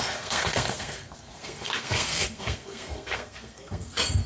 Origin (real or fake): fake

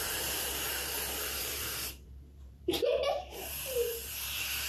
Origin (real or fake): fake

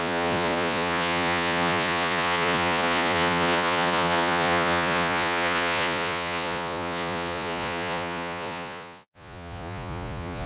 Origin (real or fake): fake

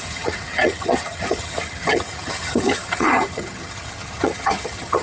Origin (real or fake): fake